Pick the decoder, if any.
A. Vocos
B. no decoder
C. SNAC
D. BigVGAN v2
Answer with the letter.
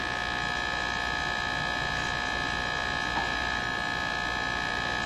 B